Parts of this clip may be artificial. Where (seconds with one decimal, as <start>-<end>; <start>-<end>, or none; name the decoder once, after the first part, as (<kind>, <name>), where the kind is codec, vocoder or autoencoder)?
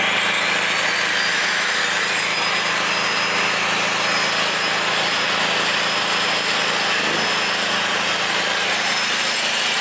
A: 1.3-1.8 (autoencoder, DAC-VAE)